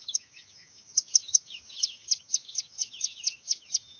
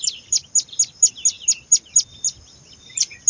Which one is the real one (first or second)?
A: second